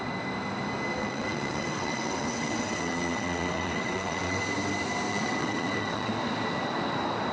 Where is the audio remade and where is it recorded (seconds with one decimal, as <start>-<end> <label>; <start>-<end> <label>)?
0.0-1.0 recorded; 1.0-4.4 remade; 4.4-5.1 recorded; 5.1-6.1 remade; 6.1-7.3 recorded